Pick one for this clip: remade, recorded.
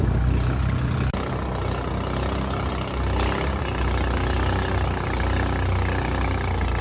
recorded